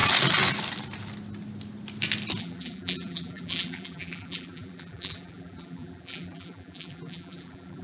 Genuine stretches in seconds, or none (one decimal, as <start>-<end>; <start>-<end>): 0.0-2.4